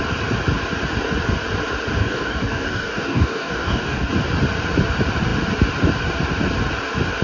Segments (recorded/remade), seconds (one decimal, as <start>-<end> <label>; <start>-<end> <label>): 0.0-2.0 recorded; 2.0-4.1 remade; 4.1-7.2 recorded